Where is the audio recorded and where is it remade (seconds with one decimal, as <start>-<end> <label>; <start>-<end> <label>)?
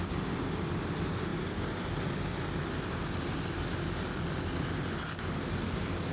0.0-6.1 recorded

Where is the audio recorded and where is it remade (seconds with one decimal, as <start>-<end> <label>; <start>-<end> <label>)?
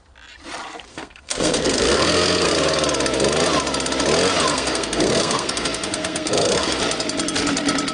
0.0-0.9 recorded; 0.9-2.5 remade; 2.5-4.5 recorded; 4.5-6.8 remade; 6.8-7.9 recorded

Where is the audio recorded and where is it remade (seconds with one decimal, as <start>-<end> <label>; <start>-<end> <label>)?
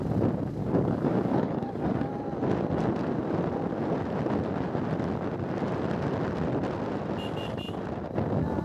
0.0-0.6 recorded; 0.6-2.1 remade; 2.1-8.6 recorded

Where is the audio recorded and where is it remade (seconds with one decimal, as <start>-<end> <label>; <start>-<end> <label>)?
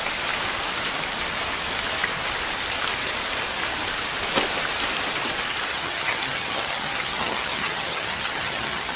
0.0-5.7 recorded; 5.7-9.0 remade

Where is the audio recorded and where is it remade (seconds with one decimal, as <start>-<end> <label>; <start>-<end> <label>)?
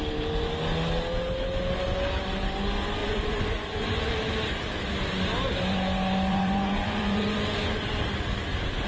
0.0-3.0 recorded; 3.0-4.1 remade; 4.1-6.3 recorded; 6.3-8.0 remade; 8.0-8.9 recorded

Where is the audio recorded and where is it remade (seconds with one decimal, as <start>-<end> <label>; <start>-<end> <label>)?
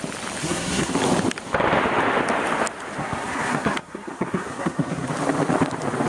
0.0-0.4 recorded; 0.4-0.9 remade; 0.9-3.0 recorded; 3.0-5.1 remade; 5.1-6.1 recorded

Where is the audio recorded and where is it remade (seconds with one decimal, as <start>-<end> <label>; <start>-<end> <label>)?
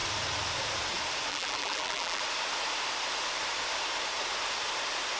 0.0-1.3 recorded; 1.3-2.2 remade; 2.2-5.2 recorded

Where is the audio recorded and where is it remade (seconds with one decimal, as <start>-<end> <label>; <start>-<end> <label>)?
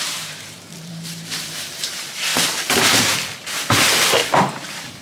0.0-2.3 remade; 2.3-4.5 recorded; 4.5-5.0 remade